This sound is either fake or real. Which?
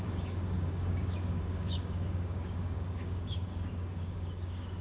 fake